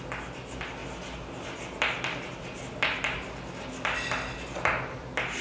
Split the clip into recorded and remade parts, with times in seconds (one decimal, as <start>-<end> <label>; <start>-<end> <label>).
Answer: 0.0-5.4 recorded